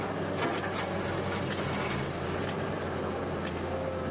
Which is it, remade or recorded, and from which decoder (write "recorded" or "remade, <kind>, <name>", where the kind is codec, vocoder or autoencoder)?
recorded